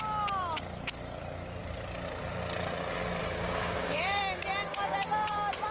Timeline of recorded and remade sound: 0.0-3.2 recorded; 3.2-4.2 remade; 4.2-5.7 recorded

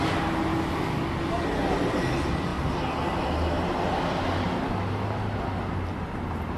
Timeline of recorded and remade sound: 0.0-0.5 recorded; 0.5-1.1 remade; 1.1-6.6 recorded

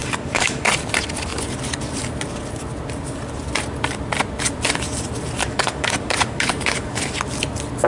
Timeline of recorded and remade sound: 0.0-0.7 remade; 0.7-5.4 recorded; 5.4-7.0 remade; 7.0-7.9 recorded

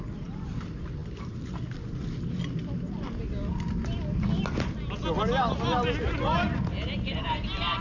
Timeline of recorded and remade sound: 0.0-7.8 recorded

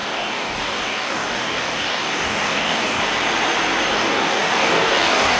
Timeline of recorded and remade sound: 0.0-3.0 remade; 3.0-3.9 recorded; 3.9-5.4 remade

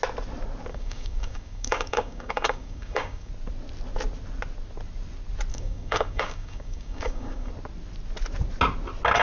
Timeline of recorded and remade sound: 0.0-0.7 recorded; 0.7-3.3 remade; 3.3-5.5 recorded; 5.5-7.5 remade; 7.5-9.2 recorded